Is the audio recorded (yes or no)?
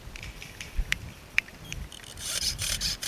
no